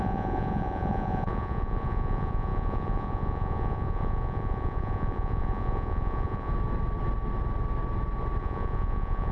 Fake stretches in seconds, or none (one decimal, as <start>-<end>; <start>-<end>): 0.0-6.5; 8.4-9.3